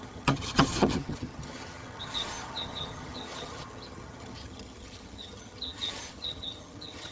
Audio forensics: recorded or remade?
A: remade